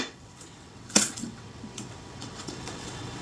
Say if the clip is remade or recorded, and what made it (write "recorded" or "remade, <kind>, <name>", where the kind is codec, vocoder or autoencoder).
remade, vocoder, WaveNeXt